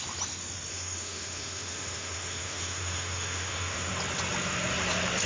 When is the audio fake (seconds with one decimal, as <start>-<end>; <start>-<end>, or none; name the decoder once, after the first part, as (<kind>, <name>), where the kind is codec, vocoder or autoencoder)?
0.7-3.9 (autoencoder, DAC-VAE)